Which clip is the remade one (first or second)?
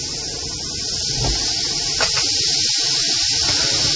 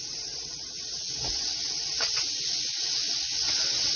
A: second